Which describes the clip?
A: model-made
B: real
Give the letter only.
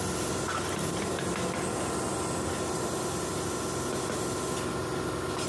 B